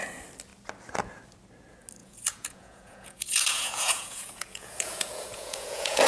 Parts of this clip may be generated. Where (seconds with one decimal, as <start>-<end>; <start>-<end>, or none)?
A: 2.0-6.1

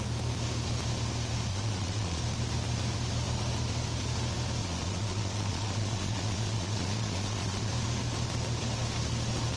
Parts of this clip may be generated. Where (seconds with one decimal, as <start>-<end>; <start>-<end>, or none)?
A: 1.5-2.2; 4.6-7.7